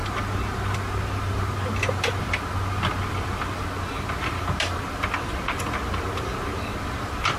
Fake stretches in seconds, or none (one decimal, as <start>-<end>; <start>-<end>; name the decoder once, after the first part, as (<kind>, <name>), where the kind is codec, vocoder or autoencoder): none